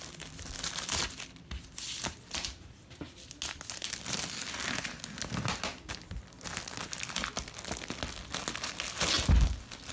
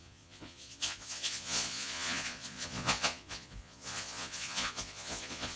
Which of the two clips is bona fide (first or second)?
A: first